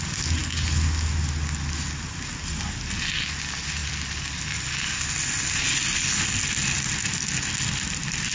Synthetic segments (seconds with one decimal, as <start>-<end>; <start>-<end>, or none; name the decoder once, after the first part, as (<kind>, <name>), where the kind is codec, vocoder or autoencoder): none

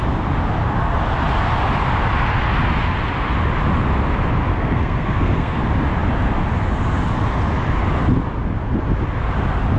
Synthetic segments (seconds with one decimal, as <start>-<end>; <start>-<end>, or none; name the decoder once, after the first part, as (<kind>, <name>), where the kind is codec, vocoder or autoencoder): 4.5-5.6 (codec, SNAC)

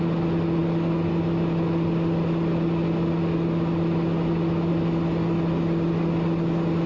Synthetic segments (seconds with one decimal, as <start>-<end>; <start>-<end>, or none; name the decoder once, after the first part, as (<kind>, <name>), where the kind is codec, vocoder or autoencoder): none

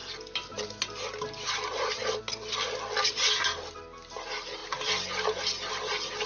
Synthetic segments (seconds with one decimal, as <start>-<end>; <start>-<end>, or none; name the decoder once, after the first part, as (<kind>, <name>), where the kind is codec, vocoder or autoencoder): none

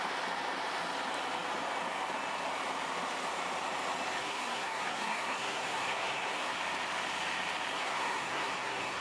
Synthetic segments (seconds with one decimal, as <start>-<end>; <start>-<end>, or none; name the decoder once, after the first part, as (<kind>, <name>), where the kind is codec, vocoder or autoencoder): 4.2-6.6 (codec, SNAC); 7.7-9.0

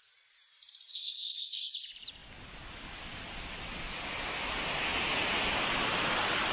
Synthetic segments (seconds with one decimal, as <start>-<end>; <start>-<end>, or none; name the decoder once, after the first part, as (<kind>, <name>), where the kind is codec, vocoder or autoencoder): 0.9-1.7 (codec, SNAC)